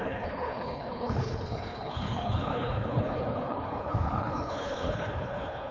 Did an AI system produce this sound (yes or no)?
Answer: yes